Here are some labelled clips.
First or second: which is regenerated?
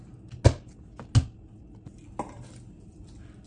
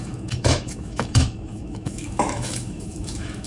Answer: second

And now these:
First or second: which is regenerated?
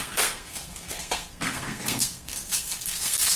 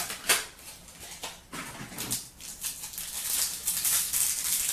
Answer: first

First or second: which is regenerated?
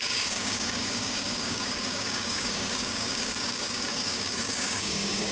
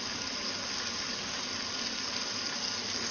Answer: first